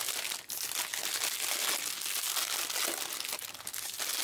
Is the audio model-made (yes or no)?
no